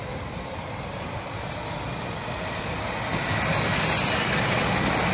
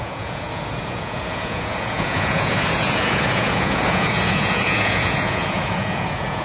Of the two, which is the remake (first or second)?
second